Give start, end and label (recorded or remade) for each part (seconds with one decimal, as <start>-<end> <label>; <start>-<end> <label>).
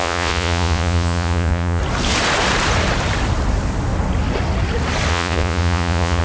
0.0-1.8 remade; 1.8-5.1 recorded; 5.1-6.2 remade